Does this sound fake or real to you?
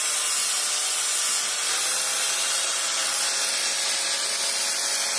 real